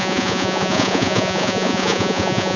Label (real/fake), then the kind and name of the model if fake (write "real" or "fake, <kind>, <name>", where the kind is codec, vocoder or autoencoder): fake, vocoder, Vocos